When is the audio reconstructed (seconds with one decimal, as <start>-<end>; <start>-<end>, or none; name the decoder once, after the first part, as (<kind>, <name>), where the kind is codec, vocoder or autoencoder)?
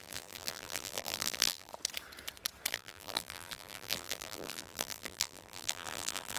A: 0.0-1.7 (vocoder, BigVGAN v2); 2.7-6.4